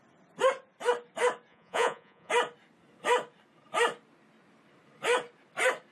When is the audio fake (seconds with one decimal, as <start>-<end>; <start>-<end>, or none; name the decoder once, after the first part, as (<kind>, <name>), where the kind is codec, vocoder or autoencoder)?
1.5-2.3 (vocoder, Vocos)